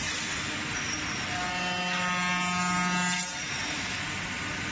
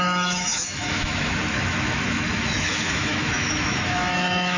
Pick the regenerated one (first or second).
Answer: second